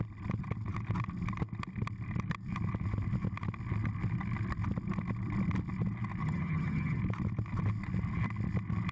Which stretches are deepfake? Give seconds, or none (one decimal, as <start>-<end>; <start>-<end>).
6.2-7.0